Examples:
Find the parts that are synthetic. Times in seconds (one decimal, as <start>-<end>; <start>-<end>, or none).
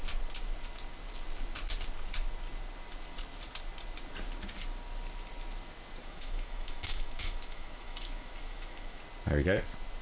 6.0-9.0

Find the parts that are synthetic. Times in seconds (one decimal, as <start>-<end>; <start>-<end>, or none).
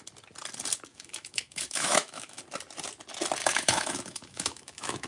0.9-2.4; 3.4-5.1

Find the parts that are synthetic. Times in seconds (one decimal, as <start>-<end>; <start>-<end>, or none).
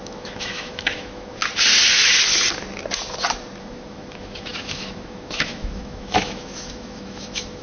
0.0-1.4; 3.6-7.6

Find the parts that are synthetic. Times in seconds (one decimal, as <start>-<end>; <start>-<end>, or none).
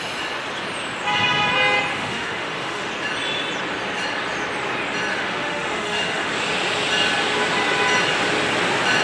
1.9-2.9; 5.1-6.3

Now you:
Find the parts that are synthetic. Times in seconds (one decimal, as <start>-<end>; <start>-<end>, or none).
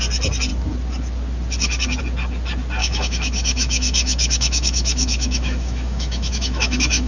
2.8-7.1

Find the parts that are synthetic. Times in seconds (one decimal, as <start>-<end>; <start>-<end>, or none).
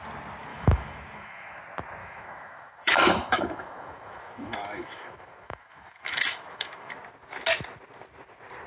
0.5-1.6; 2.0-6.9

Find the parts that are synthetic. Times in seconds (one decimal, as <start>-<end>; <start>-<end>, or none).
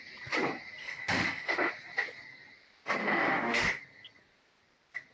0.8-1.7; 3.0-3.6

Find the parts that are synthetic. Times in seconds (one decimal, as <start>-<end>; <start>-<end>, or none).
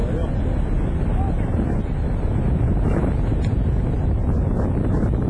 none